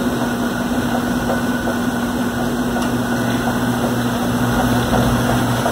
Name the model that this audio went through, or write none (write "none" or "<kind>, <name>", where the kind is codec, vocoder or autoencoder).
vocoder, BigVGAN v2